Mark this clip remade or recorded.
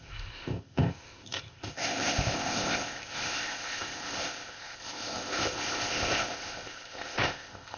remade